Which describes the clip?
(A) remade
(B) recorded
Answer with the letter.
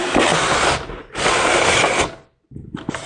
B